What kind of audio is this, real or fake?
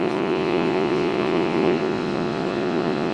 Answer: fake